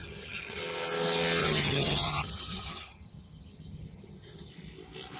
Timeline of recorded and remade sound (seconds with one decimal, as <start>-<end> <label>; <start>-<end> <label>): 0.0-0.6 remade; 0.6-1.4 recorded; 1.4-4.5 remade; 4.5-5.2 recorded